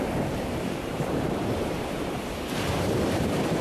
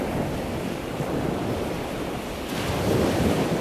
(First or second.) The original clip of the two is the second